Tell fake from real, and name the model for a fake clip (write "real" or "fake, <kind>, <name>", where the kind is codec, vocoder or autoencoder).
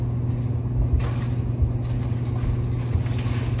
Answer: real